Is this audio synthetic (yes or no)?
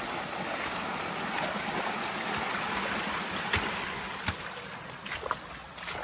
no